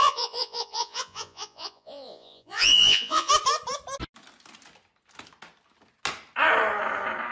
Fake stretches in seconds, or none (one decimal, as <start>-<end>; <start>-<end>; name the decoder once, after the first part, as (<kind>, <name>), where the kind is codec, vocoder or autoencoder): 0.0-3.3 (vocoder, Vocos)